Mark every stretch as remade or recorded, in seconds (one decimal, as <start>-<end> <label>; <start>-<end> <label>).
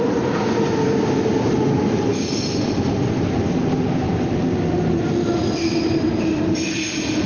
0.0-7.3 recorded